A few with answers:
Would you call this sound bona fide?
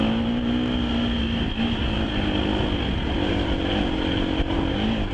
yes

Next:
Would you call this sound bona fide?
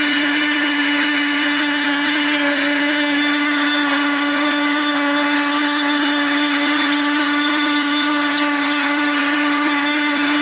no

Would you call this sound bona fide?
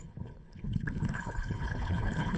no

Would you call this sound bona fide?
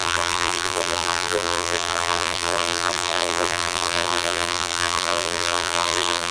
no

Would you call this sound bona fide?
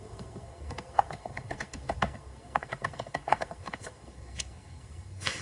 no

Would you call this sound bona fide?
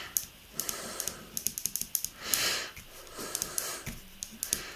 yes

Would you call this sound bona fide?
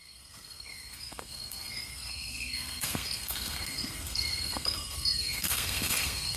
no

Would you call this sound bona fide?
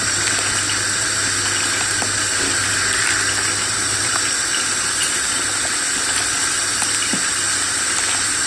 yes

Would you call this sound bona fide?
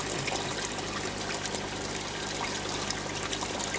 yes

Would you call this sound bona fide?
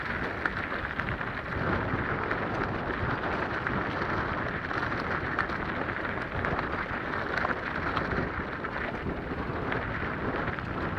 yes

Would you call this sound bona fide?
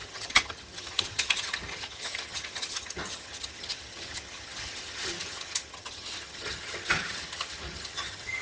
no